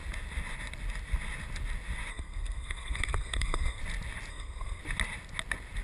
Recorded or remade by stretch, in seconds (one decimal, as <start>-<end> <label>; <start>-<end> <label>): 0.0-2.1 recorded; 2.1-3.8 remade; 3.8-4.3 recorded; 4.3-4.8 remade; 4.8-5.8 recorded